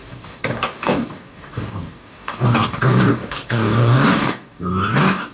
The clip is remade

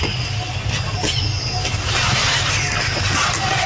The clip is recorded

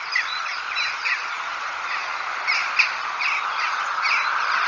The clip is recorded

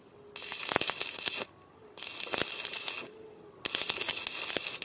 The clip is recorded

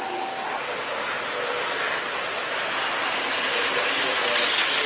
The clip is recorded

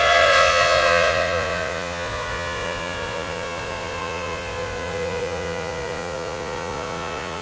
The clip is remade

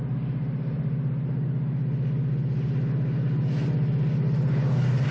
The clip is recorded